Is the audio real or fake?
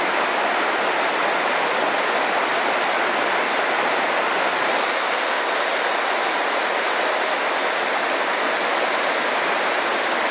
real